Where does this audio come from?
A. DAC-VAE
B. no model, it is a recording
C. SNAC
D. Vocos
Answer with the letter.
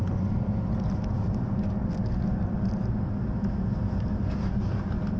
B